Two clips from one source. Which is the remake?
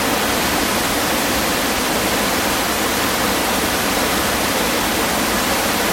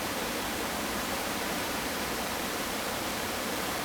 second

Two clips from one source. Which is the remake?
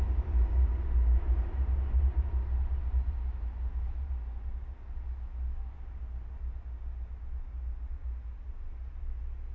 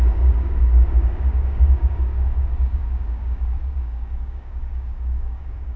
second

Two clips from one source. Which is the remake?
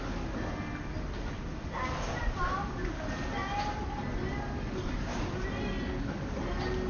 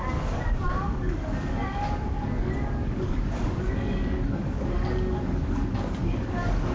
second